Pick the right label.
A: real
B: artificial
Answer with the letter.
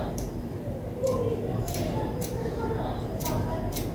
B